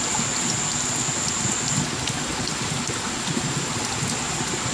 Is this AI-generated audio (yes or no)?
no